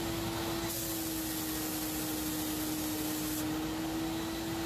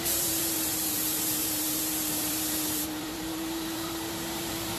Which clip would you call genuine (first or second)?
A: first